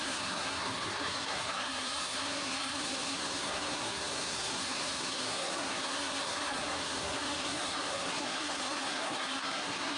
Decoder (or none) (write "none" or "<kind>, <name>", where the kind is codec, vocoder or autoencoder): codec, SNAC